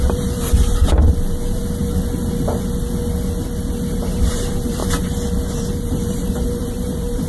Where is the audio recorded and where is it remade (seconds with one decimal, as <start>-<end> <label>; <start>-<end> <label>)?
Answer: 0.0-1.6 remade; 1.6-3.9 recorded; 3.9-4.8 remade; 4.8-5.5 recorded; 5.5-7.3 remade